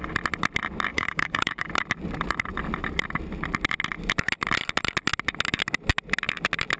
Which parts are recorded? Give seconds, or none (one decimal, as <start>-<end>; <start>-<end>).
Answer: 0.0-0.9; 1.7-6.8